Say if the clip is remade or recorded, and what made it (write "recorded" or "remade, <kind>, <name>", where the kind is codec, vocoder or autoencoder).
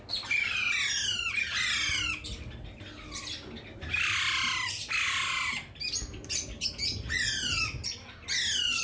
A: recorded